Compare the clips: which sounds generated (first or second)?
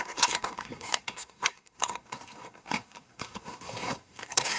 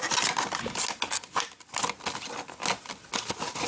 first